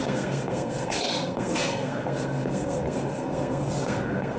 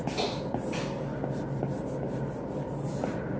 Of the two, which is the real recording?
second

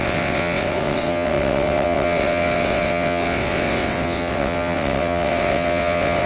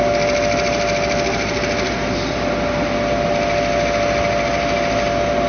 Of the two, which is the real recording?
second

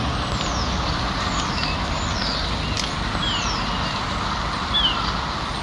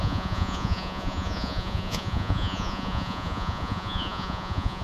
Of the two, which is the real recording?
first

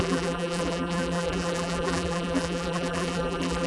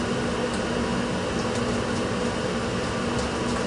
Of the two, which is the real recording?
second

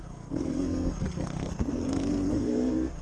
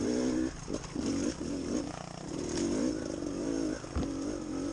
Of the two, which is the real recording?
second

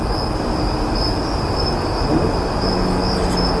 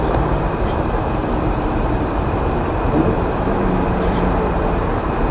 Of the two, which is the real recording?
first